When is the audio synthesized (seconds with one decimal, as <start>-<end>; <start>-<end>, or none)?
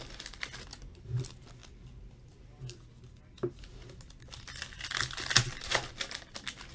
none